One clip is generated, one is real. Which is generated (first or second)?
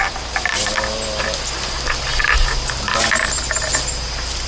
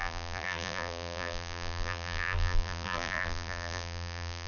second